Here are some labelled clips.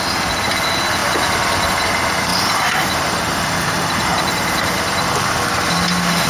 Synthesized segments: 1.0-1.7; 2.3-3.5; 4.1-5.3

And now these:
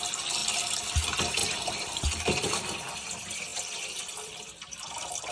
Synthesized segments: 0.4-0.9; 1.4-3.1; 3.5-5.3

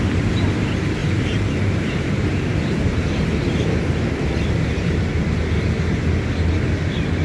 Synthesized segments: 1.0-5.3